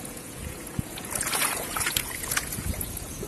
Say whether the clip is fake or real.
fake